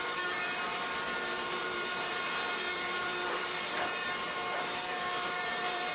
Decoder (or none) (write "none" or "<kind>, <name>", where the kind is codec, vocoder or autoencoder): vocoder, BigVGAN v2